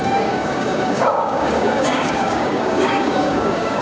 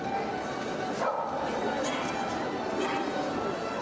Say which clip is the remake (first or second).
first